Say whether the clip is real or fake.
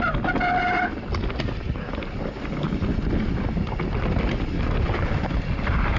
real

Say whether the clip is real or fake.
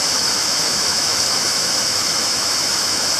fake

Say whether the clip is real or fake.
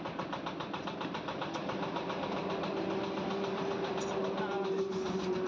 real